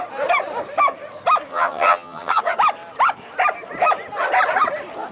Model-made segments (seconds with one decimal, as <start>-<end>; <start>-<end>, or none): 1.5-2.4